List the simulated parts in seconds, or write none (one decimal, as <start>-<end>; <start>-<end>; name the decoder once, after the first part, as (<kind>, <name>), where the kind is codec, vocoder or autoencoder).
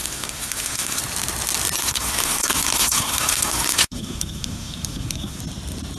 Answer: 0.0-1.0 (codec, SNAC); 1.8-5.4